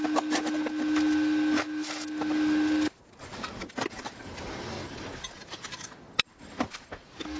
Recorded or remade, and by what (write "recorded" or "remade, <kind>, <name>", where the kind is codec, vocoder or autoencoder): recorded